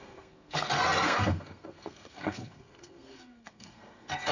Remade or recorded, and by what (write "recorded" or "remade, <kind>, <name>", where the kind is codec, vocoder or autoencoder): remade, codec, SNAC